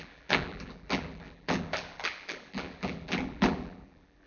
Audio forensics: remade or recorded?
remade